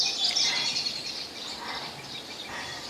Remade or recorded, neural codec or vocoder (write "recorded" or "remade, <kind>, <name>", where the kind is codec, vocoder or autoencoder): recorded